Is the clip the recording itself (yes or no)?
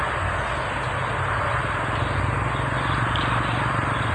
yes